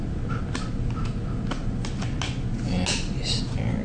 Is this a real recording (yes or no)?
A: yes